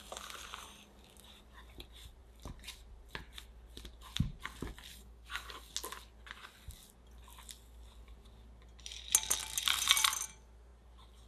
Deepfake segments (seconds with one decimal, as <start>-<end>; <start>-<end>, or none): 4.9-5.7